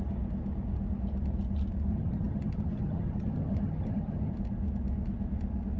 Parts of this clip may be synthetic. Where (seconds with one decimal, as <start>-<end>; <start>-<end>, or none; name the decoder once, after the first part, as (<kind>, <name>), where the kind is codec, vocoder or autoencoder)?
1.9-4.3 (vocoder, HiFi-GAN)